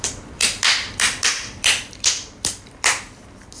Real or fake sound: fake